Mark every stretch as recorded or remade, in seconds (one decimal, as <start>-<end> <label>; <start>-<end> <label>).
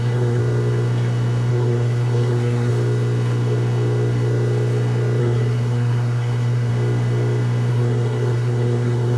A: 0.0-0.4 remade; 0.4-1.5 recorded; 1.5-2.7 remade; 2.7-5.2 recorded; 5.2-6.7 remade; 6.7-7.7 recorded; 7.7-9.2 remade